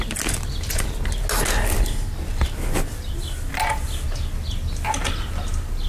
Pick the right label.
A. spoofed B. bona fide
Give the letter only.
B